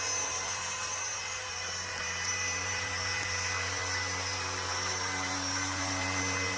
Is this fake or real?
fake